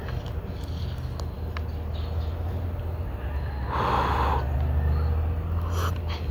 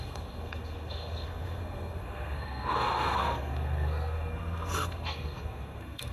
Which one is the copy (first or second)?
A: second